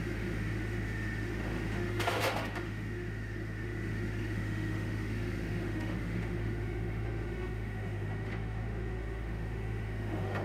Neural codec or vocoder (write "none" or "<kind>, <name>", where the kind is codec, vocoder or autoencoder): autoencoder, DAC-VAE